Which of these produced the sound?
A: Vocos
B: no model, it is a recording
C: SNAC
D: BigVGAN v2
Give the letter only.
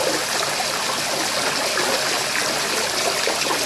B